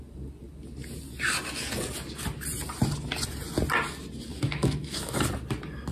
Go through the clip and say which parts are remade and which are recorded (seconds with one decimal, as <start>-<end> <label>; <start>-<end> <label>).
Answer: 0.0-4.3 recorded; 4.3-5.2 remade; 5.2-5.9 recorded